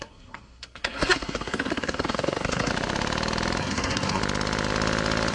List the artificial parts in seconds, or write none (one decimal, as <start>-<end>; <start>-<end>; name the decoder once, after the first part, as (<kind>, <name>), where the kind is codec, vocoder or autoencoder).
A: 0.0-2.7 (codec, SNAC); 3.6-4.2